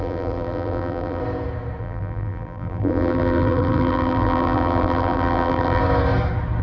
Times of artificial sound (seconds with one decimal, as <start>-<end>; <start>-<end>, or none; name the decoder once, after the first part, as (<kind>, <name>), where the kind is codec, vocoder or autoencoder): 0.0-1.2 (vocoder, BigVGAN v2); 1.8-5.8